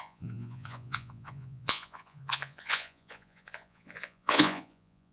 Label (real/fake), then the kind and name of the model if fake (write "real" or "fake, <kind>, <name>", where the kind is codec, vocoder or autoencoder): fake, vocoder, Vocos